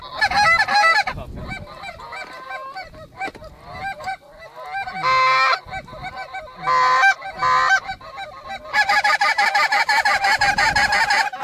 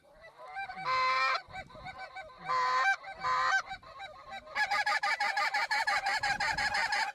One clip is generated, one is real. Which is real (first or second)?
first